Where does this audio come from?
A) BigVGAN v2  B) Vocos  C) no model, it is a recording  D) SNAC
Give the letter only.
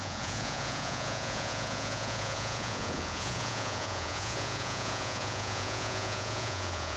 B